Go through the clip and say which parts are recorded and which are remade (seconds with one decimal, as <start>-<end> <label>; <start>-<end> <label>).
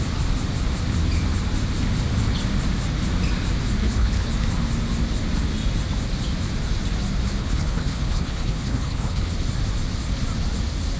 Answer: 0.0-3.8 recorded; 3.8-4.3 remade; 4.3-7.4 recorded; 7.4-9.3 remade; 9.3-11.0 recorded